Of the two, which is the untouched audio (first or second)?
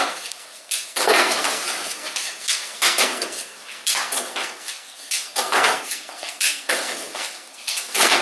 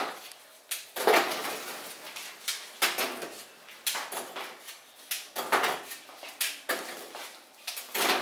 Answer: second